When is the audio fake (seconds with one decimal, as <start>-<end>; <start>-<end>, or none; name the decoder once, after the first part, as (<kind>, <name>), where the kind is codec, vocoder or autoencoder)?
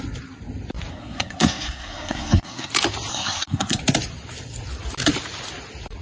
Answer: 0.9-2.7 (codec, SNAC); 3.1-3.8